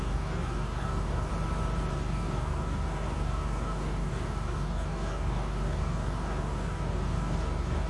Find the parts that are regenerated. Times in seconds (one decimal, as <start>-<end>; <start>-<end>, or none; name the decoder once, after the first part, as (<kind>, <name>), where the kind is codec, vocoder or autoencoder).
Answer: 0.0-1.3 (codec, DAC); 1.9-7.9